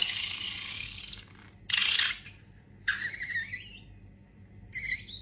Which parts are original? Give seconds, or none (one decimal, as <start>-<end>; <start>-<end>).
1.0-5.2